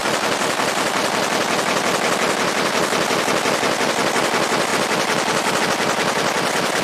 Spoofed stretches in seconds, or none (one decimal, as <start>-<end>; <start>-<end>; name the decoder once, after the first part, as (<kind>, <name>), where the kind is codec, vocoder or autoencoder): 4.7-5.6 (vocoder, BigVGAN v2)